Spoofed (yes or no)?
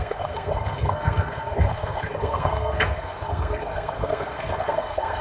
yes